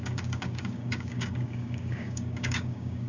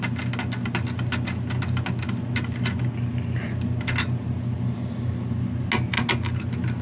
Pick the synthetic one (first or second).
first